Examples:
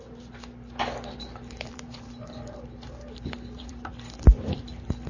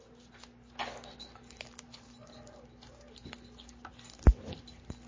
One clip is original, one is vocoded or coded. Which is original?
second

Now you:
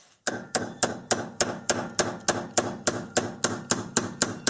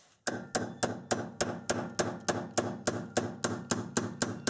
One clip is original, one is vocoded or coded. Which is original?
second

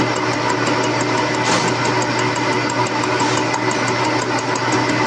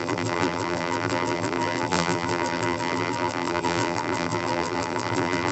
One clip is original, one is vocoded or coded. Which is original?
first